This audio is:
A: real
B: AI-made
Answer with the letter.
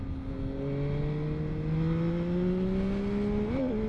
A